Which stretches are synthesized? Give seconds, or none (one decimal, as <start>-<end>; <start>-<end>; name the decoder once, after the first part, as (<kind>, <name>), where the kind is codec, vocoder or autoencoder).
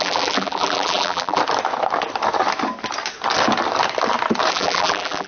0.0-1.4 (vocoder, BigVGAN v2); 4.5-5.3